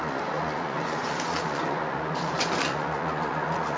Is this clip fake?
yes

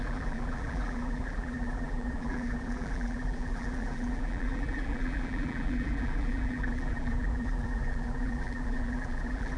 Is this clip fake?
yes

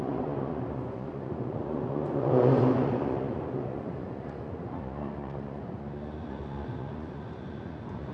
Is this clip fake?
yes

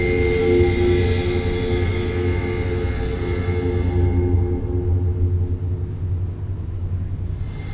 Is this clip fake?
no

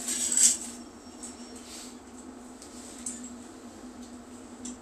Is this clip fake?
no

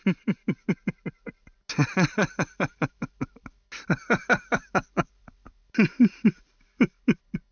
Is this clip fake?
no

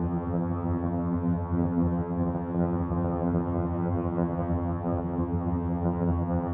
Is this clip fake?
yes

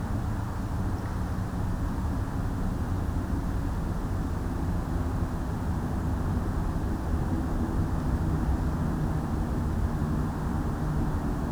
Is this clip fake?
no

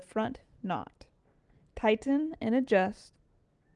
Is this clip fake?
no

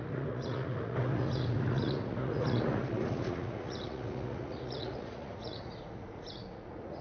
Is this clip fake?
yes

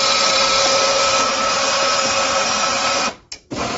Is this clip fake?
yes